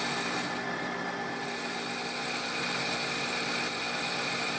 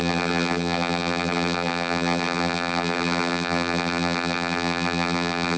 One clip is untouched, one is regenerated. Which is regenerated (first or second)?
second